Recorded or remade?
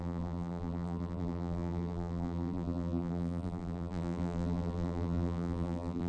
remade